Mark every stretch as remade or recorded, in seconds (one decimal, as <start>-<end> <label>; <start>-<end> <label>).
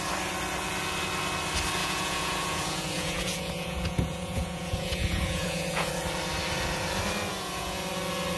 0.0-1.8 recorded; 1.8-5.9 remade; 5.9-7.3 recorded; 7.3-7.8 remade; 7.8-8.4 recorded